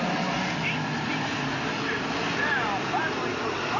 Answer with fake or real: real